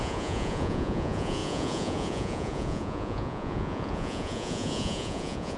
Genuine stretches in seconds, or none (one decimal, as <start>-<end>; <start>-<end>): none